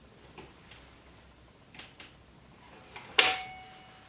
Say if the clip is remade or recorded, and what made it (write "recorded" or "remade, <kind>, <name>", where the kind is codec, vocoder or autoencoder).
recorded